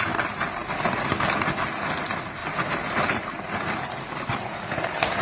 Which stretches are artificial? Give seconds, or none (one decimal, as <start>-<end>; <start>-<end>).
none